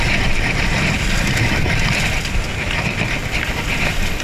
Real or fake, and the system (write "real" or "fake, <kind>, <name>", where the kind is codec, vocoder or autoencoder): real